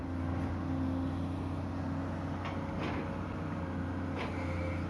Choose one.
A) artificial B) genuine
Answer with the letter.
B